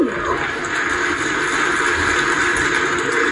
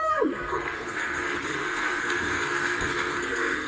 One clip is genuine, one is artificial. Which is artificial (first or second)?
second